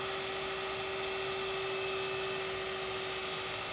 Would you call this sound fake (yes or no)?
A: no